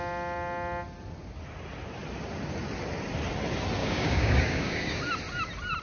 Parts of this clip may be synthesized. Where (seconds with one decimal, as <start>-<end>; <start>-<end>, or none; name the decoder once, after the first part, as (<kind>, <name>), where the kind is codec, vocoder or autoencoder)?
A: 3.8-5.0 (codec, DAC)

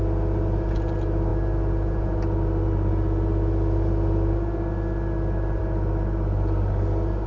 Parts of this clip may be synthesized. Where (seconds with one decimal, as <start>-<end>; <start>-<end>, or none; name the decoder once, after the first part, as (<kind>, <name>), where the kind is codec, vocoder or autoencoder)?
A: none

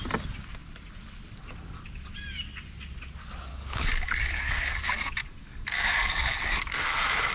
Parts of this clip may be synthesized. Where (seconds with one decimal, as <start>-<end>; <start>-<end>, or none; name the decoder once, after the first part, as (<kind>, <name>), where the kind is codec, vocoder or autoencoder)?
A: 3.5-4.9 (codec, DAC); 5.4-7.3

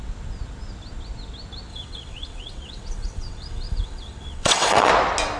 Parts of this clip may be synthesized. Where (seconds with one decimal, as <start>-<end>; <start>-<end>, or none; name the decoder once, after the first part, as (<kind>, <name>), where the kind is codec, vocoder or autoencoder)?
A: 1.7-4.9 (vocoder, WaveNeXt)

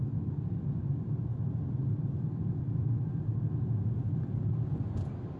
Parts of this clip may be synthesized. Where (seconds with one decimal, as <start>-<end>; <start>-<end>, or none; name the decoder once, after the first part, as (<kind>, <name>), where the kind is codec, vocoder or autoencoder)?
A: none

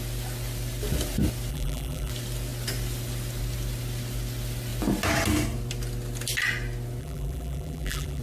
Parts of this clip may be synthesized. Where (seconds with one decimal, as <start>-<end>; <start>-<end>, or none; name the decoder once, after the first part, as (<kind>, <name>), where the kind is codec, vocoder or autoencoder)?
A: 1.5-2.1 (vocoder, BigVGAN v2); 7.0-8.2

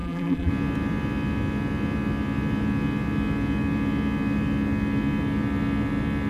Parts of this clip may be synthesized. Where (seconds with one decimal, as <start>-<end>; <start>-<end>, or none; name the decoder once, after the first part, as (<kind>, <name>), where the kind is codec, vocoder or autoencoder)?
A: 0.0-0.5 (vocoder, BigVGAN v2)